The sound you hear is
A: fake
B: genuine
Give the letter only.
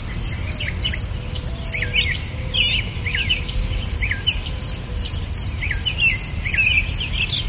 B